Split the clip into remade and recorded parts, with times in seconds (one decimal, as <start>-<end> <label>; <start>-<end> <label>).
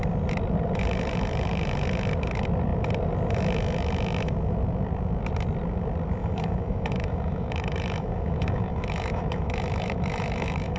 0.0-6.2 recorded; 6.2-10.8 remade